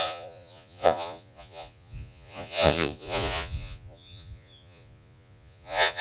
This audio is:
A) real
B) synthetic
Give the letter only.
B